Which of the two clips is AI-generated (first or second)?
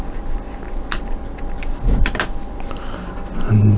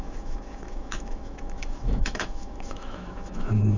second